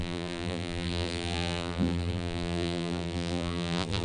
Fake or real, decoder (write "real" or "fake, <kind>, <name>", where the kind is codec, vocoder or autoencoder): fake, vocoder, BigVGAN v2